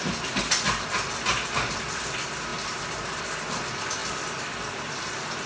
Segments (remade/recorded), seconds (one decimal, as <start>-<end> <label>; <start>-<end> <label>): 0.0-5.5 recorded